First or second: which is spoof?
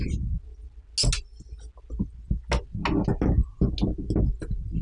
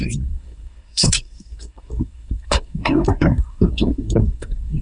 second